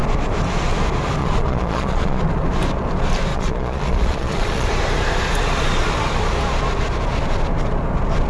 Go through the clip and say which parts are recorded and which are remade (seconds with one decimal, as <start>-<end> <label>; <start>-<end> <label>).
0.0-1.2 recorded; 1.2-2.2 remade; 2.2-3.3 recorded; 3.3-4.7 remade; 4.7-8.3 recorded